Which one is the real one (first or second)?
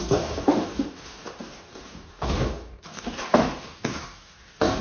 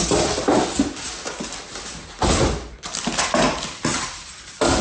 second